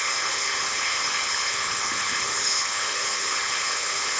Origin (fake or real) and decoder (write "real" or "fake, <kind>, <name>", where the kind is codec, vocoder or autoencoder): fake, codec, HILCodec